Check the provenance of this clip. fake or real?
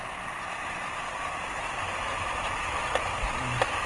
real